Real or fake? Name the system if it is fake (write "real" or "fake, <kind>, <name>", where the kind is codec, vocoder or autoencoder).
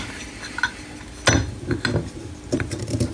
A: real